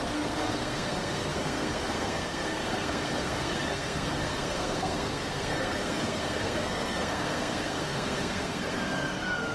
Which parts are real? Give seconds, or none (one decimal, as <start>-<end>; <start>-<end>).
none